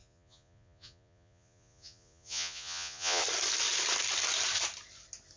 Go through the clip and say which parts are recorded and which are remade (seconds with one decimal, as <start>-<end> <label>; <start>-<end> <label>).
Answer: 0.0-3.2 remade; 3.2-5.4 recorded